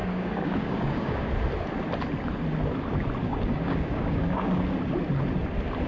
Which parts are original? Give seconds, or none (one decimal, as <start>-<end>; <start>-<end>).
1.3-3.2; 4.6-5.9